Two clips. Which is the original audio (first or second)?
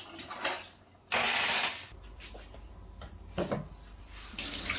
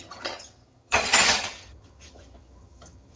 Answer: first